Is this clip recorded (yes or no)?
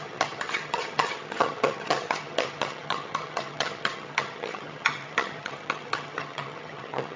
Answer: no